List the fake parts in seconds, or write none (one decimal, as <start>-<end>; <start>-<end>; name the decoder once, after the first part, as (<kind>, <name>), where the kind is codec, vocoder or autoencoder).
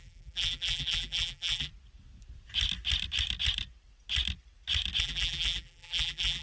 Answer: 0.0-1.7 (vocoder, BigVGAN v2); 5.0-6.4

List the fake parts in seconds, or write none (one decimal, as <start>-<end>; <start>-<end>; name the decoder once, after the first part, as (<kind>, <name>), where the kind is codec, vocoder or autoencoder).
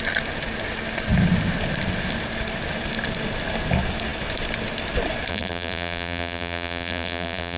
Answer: 5.3-7.6 (vocoder, BigVGAN v2)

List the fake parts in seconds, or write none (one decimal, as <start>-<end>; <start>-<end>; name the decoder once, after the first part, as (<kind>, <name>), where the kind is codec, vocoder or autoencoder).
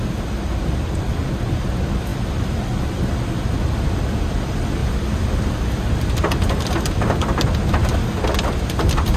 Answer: none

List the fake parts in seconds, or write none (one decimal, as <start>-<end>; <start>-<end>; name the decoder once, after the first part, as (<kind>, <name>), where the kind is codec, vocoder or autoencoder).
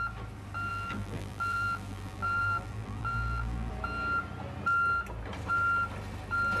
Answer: 0.7-3.7 (vocoder, BigVGAN v2)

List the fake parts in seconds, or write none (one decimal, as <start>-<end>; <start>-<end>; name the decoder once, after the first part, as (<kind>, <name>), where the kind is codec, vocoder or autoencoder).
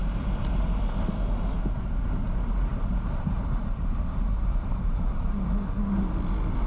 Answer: 0.0-0.8 (vocoder, BigVGAN v2); 2.7-5.5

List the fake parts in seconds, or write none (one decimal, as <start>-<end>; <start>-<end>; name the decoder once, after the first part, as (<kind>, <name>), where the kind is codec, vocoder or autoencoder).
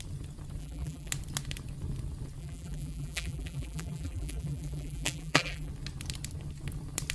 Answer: 0.6-1.1 (vocoder, BigVGAN v2); 2.4-5.7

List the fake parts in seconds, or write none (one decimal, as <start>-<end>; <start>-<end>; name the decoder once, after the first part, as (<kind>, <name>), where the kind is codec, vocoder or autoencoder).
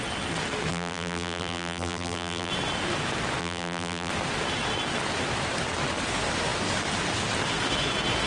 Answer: 0.7-2.5 (vocoder, BigVGAN v2); 3.4-4.1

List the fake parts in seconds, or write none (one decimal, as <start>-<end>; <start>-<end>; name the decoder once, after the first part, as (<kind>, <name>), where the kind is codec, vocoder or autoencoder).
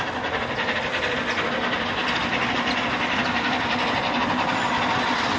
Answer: none